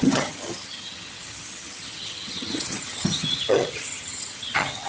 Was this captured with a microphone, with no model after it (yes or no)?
no